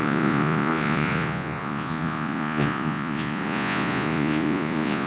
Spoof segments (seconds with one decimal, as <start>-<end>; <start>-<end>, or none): 0.0-5.1